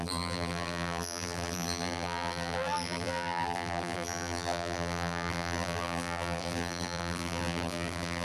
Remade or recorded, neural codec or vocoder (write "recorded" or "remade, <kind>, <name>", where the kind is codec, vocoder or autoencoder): remade, vocoder, BigVGAN v2